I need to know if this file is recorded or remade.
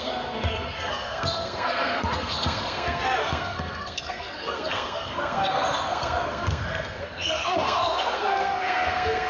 remade